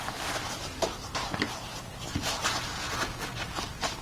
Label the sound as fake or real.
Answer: real